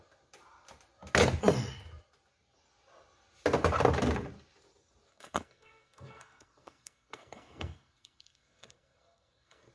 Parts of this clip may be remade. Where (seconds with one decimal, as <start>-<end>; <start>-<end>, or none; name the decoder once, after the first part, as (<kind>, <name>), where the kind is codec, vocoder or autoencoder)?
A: 5.1-9.7 (codec, SNAC)